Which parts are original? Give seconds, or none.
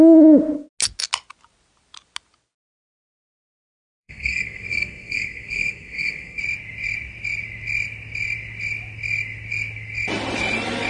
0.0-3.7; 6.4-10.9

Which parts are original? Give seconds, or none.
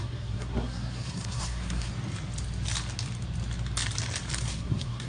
1.9-4.4